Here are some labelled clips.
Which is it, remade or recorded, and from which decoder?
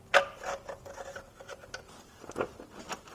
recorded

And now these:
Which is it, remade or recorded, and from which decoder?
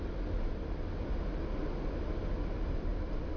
recorded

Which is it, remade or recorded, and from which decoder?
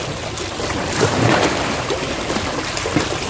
remade, vocoder, BigVGAN v2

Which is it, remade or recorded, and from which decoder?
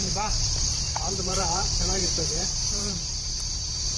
remade, vocoder, BigVGAN v2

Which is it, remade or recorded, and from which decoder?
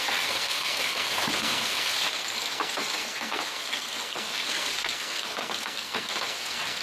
remade, codec, SNAC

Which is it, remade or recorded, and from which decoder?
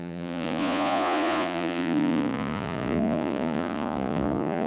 remade, vocoder, Vocos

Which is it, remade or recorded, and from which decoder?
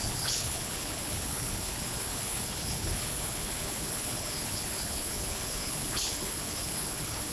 remade, codec, HILCodec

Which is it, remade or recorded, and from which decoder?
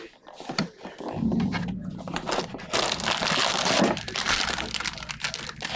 recorded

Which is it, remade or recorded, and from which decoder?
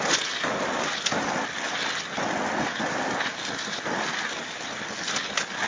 recorded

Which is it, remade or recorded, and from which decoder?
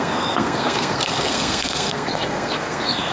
remade, codec, SNAC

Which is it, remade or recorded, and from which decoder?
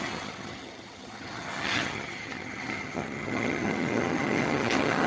remade, vocoder, HiFi-GAN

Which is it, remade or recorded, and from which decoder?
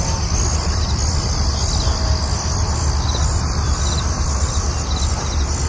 recorded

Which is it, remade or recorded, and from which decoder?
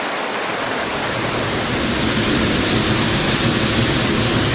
recorded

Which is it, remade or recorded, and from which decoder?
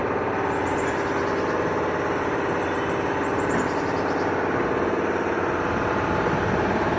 recorded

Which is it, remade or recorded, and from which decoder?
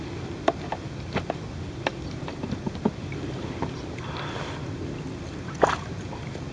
recorded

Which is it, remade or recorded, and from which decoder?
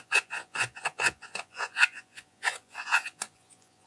remade, vocoder, Vocos